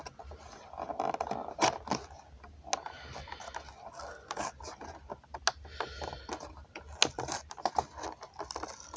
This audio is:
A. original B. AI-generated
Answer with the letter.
A